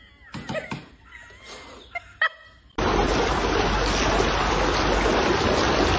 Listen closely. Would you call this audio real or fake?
real